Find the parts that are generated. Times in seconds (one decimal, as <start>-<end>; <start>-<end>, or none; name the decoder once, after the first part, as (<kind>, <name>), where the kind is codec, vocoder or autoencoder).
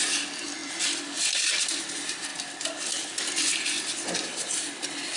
0.6-1.7 (vocoder, BigVGAN v2)